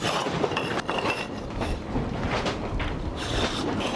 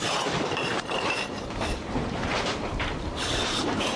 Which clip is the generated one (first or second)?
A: second